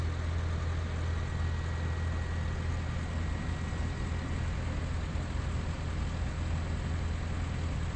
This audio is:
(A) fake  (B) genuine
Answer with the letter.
B